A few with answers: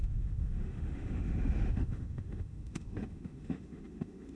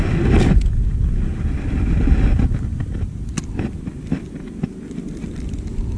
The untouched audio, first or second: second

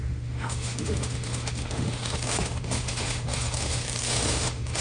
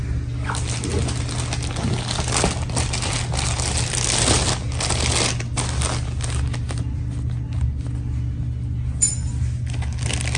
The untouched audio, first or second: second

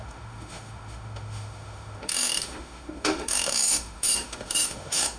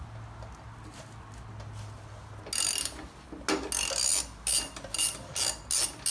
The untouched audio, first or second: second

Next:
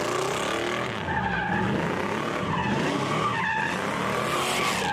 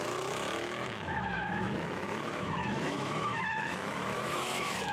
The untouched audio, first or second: first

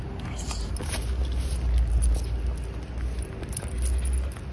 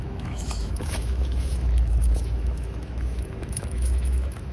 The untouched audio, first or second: first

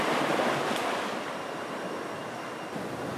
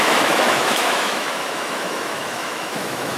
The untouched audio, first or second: first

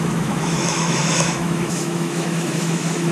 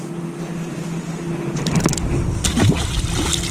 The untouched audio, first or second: second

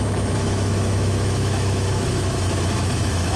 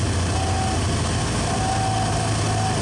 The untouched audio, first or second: second